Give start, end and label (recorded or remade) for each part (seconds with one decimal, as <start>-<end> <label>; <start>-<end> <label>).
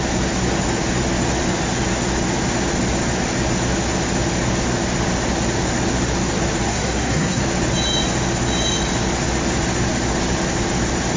0.0-6.7 recorded; 6.7-7.4 remade; 7.4-11.2 recorded